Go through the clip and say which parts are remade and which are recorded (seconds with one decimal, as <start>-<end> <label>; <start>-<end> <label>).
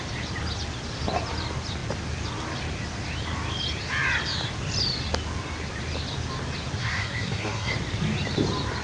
0.0-6.8 recorded; 6.8-7.7 remade; 7.7-8.8 recorded